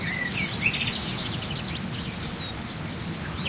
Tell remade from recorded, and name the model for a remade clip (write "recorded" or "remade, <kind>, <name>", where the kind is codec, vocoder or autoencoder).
recorded